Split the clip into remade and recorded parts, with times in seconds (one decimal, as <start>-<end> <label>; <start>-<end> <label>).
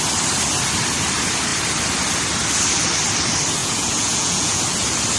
0.0-3.6 recorded; 3.6-4.6 remade; 4.6-5.2 recorded